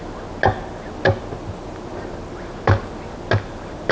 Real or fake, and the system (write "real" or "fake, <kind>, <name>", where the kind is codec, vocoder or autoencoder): real